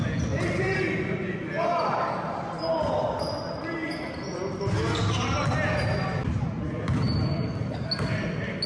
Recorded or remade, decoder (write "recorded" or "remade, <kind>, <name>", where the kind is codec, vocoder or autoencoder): recorded